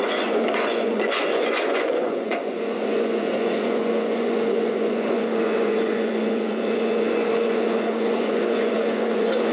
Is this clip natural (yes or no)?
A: no